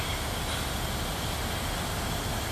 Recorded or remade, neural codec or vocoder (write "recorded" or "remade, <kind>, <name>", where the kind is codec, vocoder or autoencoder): recorded